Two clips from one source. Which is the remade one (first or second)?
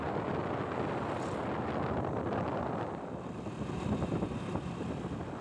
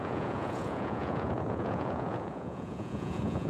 second